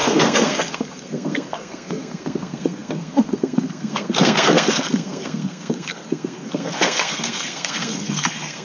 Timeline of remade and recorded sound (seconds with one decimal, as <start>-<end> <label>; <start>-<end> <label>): 0.0-8.6 remade